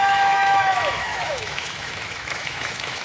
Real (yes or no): no